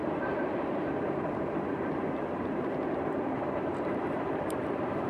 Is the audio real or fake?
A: fake